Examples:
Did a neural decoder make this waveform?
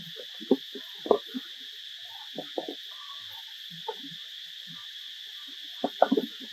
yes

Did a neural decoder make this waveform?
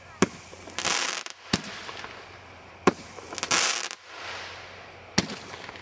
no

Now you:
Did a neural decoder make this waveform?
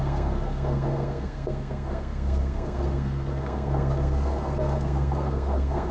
yes